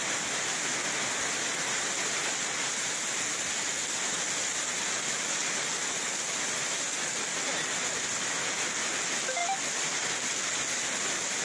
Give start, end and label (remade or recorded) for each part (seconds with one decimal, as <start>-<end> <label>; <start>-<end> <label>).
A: 0.0-11.4 recorded